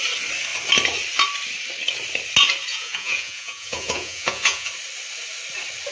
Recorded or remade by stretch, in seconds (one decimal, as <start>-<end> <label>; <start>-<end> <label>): 0.0-2.7 recorded; 2.7-4.7 remade; 4.7-5.9 recorded